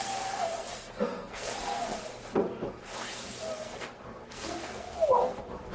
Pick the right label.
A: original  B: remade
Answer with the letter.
B